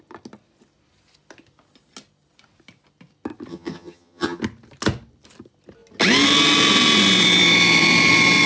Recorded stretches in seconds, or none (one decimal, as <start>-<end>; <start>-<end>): 0.0-3.5; 4.4-8.5

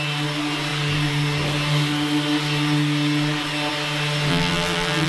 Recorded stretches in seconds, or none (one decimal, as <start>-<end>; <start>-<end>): 0.0-4.3

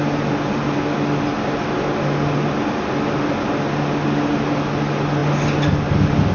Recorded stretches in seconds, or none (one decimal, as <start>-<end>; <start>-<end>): 0.0-6.3

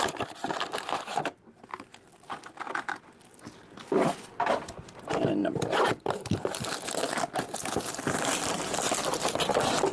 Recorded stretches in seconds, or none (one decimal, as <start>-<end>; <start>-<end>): 0.0-9.9

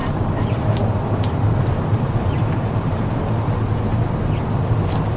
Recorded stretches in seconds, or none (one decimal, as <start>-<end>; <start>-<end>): 3.1-3.9; 4.8-5.2